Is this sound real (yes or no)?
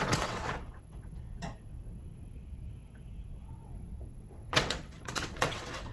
no